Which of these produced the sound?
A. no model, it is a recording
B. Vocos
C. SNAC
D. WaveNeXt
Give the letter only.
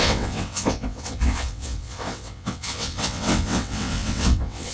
D